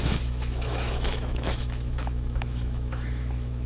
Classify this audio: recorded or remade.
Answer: remade